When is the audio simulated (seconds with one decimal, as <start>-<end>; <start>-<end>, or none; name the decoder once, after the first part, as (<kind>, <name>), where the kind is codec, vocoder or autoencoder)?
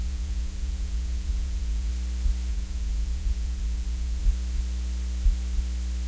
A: 0.0-1.9 (vocoder, Vocos); 2.5-4.2